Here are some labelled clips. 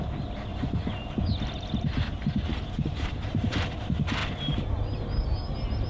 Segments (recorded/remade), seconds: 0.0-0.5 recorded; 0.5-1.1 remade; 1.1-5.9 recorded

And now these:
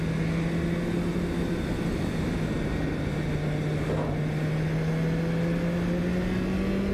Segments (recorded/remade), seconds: 0.0-6.9 recorded

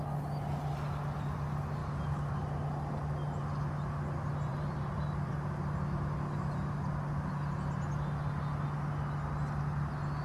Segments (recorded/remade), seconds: 0.0-4.5 recorded; 4.5-5.3 remade; 5.3-10.2 recorded

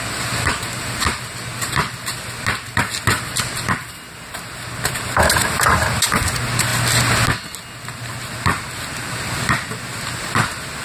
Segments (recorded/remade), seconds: 0.0-10.8 recorded

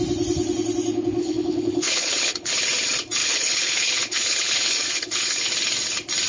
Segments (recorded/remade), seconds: 0.0-1.2 recorded; 1.2-2.5 remade; 2.5-3.2 recorded; 3.2-5.5 remade; 5.5-6.3 recorded

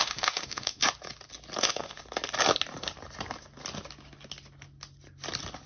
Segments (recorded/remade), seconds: 0.0-0.8 remade; 0.8-1.6 recorded; 1.6-2.0 remade; 2.0-5.7 recorded

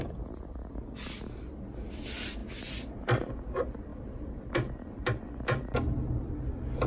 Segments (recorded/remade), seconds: 0.0-3.9 recorded; 3.9-4.5 remade; 4.5-6.9 recorded

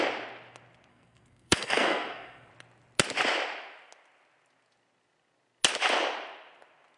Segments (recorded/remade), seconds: 0.0-0.9 recorded; 0.9-2.5 remade; 2.5-7.0 recorded